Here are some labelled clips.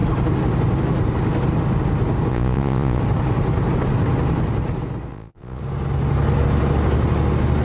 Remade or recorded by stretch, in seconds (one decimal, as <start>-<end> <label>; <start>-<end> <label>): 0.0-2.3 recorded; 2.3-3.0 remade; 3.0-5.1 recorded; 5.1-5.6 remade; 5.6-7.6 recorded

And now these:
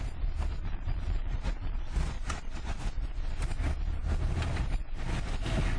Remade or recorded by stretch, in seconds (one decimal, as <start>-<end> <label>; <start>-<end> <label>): 0.0-0.5 recorded; 0.5-2.8 remade; 2.8-5.8 recorded

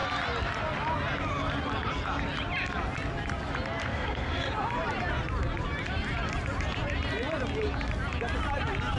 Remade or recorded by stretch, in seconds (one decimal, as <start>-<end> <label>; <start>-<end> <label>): 0.0-3.8 recorded; 3.8-4.5 remade; 4.5-9.0 recorded